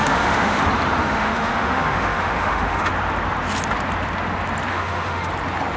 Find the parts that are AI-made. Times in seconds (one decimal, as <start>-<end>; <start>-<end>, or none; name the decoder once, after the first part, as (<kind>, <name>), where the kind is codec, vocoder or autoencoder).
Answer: 0.0-0.6 (autoencoder, DAC-VAE); 1.0-2.9; 4.7-5.3